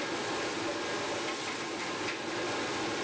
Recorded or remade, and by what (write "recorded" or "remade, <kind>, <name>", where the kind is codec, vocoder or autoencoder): recorded